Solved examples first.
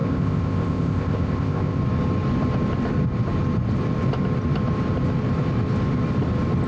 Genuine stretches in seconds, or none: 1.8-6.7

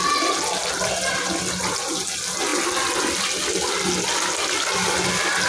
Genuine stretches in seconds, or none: 0.0-5.5

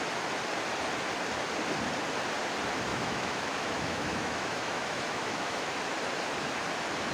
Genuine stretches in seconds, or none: 0.0-2.9; 5.8-7.1

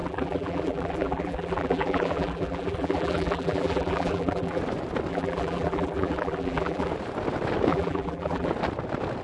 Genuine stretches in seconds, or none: 4.6-5.1; 6.9-7.7; 8.5-9.2

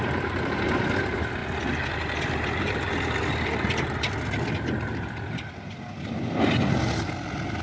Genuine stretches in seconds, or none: 0.0-7.6

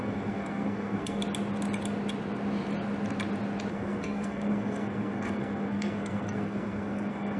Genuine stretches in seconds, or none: 1.2-3.7